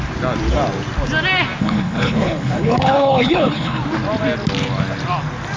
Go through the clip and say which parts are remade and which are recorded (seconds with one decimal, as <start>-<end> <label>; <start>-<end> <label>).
0.0-1.6 recorded; 1.6-3.8 remade; 3.8-5.6 recorded

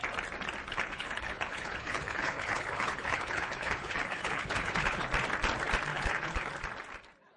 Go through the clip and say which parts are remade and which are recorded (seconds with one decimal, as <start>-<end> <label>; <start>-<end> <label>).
0.0-0.7 recorded; 0.7-5.1 remade; 5.1-5.9 recorded; 5.9-6.5 remade; 6.5-7.4 recorded